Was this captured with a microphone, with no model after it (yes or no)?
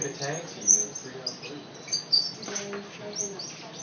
yes